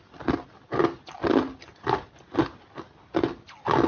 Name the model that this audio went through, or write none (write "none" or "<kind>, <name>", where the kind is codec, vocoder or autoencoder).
none